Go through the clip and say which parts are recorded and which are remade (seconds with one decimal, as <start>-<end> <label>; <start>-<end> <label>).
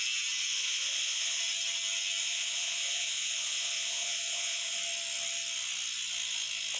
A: 0.0-0.5 recorded; 0.5-1.4 remade; 1.4-2.2 recorded; 2.2-4.8 remade; 4.8-6.8 recorded